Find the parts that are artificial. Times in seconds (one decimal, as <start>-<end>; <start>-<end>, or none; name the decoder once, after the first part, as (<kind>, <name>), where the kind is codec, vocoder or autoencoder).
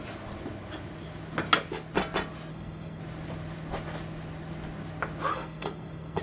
2.5-3.0 (codec, SNAC); 5.3-6.2